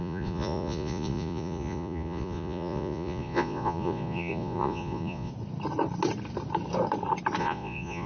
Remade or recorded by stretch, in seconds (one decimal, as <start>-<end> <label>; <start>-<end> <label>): 0.0-5.3 remade; 5.3-7.4 recorded; 7.4-8.1 remade